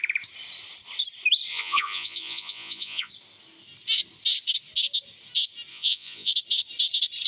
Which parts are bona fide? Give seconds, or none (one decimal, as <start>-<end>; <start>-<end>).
0.0-1.5; 3.1-5.7; 6.3-7.3